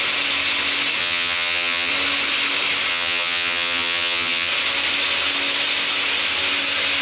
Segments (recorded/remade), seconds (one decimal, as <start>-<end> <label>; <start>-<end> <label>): 0.0-1.0 recorded; 1.0-1.9 remade; 1.9-2.9 recorded; 2.9-4.5 remade; 4.5-7.0 recorded

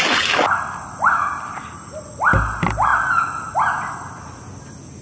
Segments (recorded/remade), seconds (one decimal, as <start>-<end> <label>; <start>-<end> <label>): 0.0-5.0 recorded